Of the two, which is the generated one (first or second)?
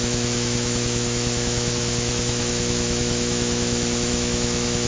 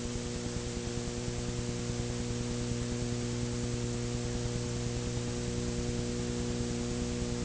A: first